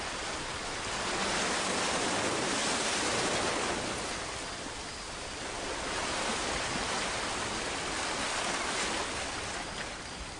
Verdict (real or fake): real